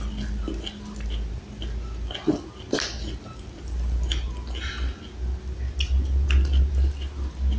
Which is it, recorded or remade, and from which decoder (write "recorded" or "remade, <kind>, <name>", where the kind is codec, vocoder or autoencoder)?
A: recorded